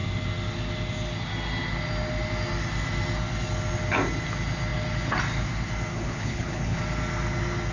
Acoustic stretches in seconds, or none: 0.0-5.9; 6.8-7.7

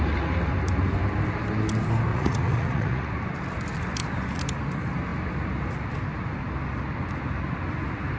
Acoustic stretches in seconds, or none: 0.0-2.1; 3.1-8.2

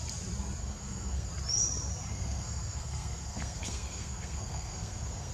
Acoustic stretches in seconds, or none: 0.0-0.6; 1.3-2.1